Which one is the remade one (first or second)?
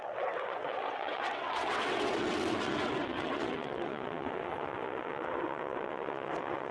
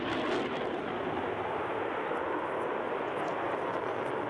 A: first